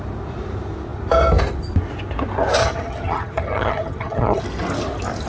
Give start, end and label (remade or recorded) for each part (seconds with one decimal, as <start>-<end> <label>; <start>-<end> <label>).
0.0-2.6 recorded; 2.6-4.4 remade; 4.4-5.3 recorded